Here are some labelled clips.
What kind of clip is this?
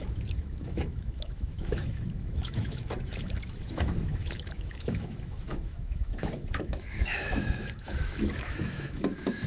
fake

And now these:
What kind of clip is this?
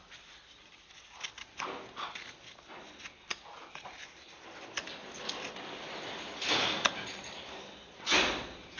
real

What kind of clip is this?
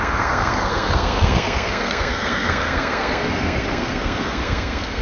fake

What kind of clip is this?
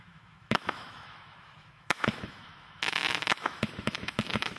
fake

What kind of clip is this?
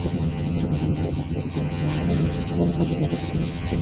fake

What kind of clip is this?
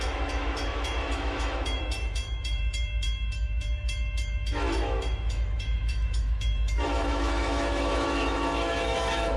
fake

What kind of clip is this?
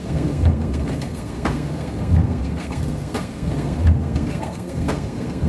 fake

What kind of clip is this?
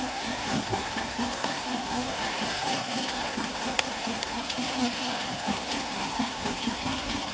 fake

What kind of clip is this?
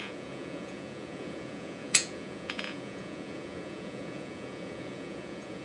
fake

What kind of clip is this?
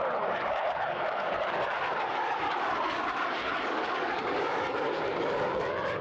fake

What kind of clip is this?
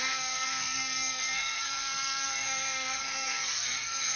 fake